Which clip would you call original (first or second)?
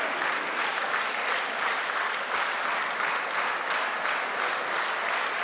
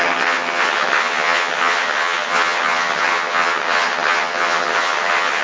first